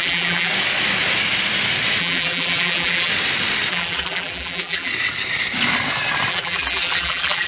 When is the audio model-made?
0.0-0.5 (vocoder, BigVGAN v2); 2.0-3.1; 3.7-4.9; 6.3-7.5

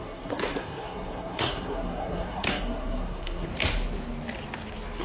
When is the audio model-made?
0.0-3.5 (codec, SNAC)

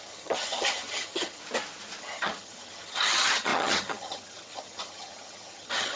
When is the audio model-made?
0.0-1.4 (vocoder, HiFi-GAN); 2.0-6.0

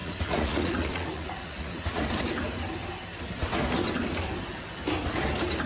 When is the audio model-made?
0.0-2.0 (vocoder, Vocos)